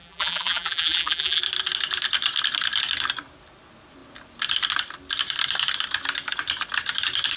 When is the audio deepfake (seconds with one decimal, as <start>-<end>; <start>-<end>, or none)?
0.0-1.4